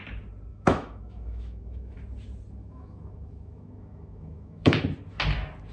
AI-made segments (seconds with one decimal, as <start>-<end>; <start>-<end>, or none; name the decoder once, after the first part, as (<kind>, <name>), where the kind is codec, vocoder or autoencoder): 0.5-2.0 (autoencoder, DAC-VAE); 2.6-4.8